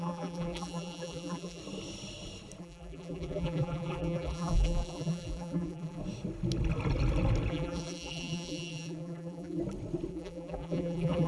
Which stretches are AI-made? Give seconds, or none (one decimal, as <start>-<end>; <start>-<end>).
0.0-1.6; 2.6-6.0; 7.5-9.6; 10.1-11.3